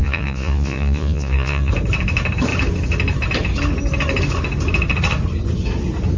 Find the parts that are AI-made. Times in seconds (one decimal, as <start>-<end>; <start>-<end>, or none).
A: 0.0-1.7